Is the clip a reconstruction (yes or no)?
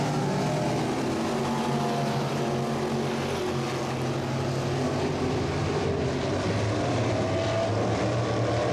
no